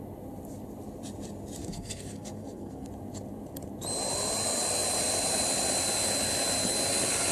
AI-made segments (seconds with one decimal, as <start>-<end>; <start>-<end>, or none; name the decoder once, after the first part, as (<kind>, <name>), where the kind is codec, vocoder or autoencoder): 1.6-2.9 (codec, SNAC)